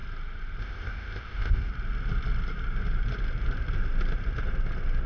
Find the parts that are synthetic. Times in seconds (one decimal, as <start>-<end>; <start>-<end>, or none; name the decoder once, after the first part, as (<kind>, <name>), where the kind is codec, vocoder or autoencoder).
0.6-1.7 (codec, ZipCodec)